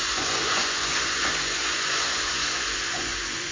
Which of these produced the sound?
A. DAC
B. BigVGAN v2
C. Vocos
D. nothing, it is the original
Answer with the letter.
C